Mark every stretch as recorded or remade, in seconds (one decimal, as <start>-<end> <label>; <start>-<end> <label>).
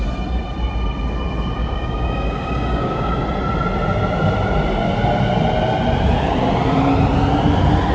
0.0-1.6 recorded; 1.6-3.1 remade; 3.1-7.9 recorded